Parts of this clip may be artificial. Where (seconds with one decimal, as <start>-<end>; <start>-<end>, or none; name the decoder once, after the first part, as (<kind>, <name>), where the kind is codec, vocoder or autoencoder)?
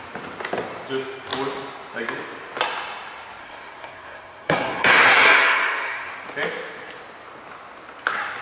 3.4-6.1 (codec, SNAC)